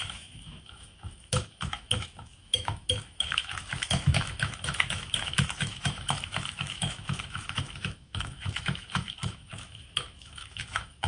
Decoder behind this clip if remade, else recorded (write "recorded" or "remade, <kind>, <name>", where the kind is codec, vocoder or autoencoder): remade, autoencoder, DAC-VAE